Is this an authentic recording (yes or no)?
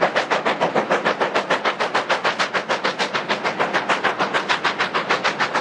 yes